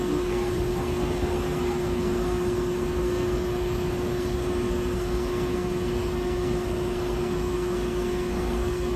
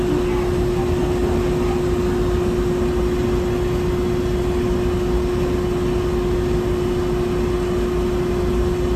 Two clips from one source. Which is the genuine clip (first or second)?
second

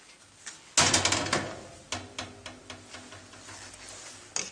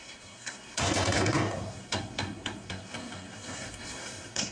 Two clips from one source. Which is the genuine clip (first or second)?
first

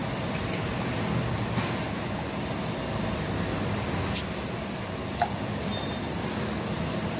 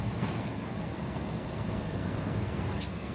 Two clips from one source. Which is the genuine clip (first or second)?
first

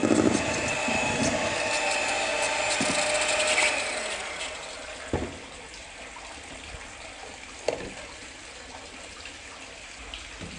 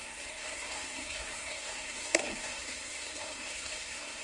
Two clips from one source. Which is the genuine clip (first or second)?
first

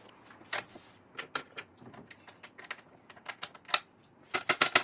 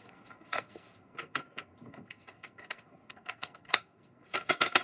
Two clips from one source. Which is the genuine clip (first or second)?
first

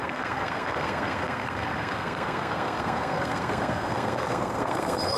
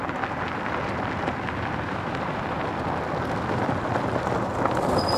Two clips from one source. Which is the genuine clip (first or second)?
second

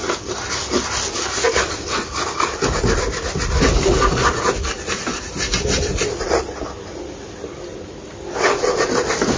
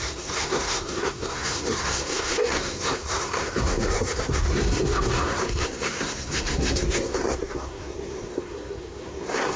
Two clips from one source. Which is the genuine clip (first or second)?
first